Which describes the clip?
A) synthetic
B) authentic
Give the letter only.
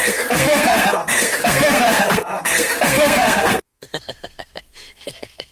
A